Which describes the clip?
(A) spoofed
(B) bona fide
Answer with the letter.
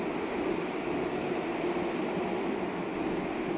B